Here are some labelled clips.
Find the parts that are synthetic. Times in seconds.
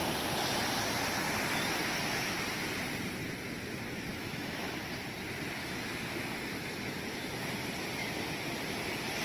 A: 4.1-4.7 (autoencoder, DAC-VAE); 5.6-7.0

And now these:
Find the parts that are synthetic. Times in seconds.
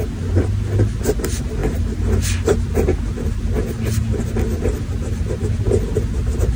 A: none